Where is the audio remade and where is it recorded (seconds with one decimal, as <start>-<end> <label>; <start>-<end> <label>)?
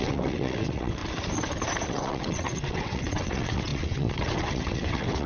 0.0-1.0 remade; 1.0-1.9 recorded; 1.9-5.3 remade